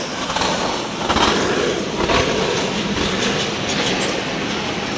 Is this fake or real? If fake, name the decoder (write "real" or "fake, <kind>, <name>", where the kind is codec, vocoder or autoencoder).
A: real